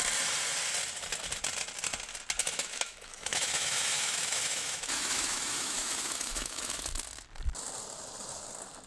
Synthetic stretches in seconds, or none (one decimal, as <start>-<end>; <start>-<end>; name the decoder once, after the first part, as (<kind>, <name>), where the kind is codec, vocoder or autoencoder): 2.4-6.9 (autoencoder, DAC-VAE)